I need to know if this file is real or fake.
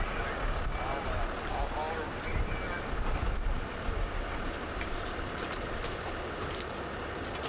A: real